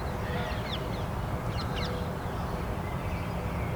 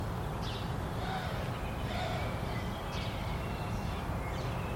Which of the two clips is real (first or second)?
first